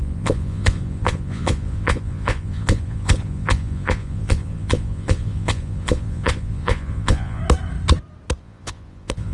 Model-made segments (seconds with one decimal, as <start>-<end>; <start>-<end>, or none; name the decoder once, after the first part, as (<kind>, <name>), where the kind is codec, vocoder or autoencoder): 0.0-7.4 (vocoder, Vocos); 8.4-9.3